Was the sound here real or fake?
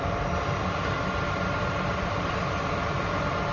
fake